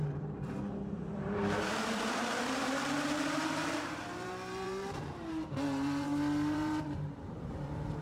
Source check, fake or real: fake